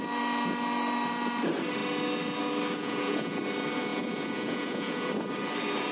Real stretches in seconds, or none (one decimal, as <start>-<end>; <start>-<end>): 0.0-2.8; 3.4-3.9; 5.1-5.9